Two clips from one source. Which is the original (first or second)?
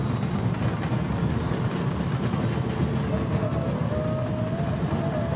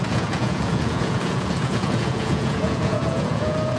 first